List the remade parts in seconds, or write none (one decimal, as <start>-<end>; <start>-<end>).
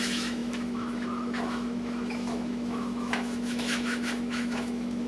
0.0-5.1